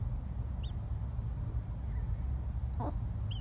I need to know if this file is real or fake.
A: real